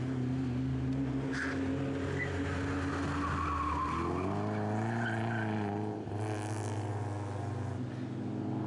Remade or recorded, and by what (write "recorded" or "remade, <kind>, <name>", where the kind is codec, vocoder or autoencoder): recorded